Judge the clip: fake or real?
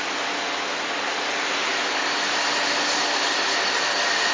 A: real